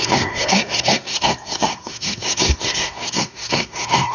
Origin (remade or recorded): remade